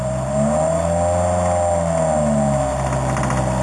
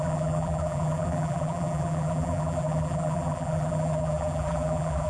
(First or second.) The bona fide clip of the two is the first